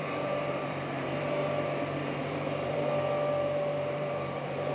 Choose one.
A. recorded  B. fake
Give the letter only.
B